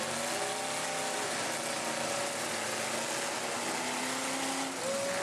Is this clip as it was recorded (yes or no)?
yes